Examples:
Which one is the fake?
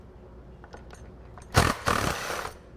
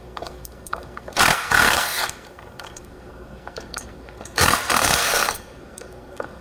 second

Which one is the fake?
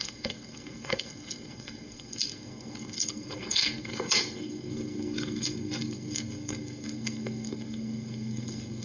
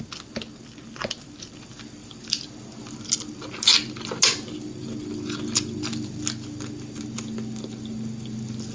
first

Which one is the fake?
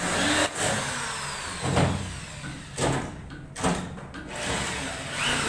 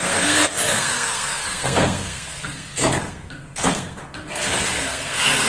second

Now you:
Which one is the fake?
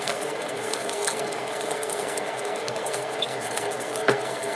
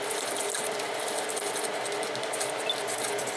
first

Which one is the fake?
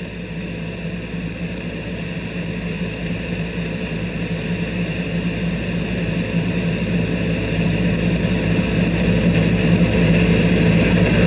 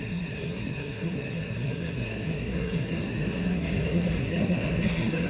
second